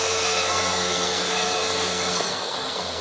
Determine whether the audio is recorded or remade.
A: remade